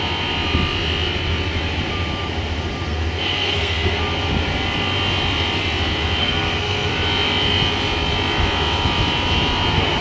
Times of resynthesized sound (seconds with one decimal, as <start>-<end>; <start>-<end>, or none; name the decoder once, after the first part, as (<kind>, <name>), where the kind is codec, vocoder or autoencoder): 2.9-4.0 (codec, SNAC); 6.2-6.9